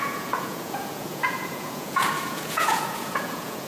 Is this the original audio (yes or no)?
no